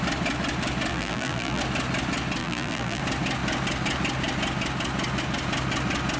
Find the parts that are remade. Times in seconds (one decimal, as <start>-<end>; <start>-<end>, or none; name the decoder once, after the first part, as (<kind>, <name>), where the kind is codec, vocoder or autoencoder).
0.9-1.6 (vocoder, BigVGAN v2); 2.4-3.0